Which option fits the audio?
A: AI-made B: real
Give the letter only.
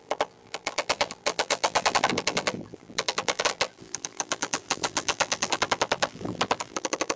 A